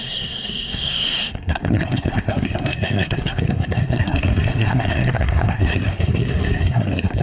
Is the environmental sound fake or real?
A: fake